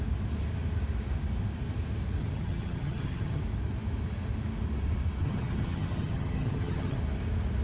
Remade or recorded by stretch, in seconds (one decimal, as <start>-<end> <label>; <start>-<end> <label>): 0.0-2.2 recorded; 2.2-3.4 remade; 3.4-5.2 recorded; 5.2-7.0 remade; 7.0-7.6 recorded